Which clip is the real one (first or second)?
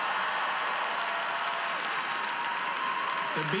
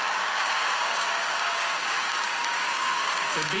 first